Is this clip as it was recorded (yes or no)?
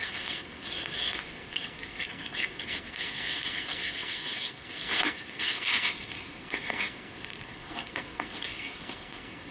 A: no